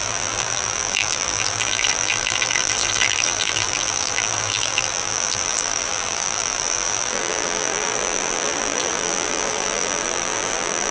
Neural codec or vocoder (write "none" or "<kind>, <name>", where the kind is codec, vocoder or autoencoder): vocoder, BigVGAN v2